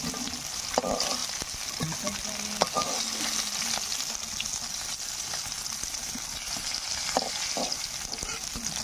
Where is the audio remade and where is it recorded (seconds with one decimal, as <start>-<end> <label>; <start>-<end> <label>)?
0.0-8.8 recorded